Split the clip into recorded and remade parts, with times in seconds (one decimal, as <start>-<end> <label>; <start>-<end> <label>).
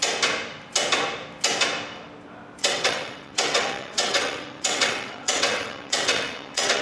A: 0.0-2.6 recorded; 2.6-6.8 remade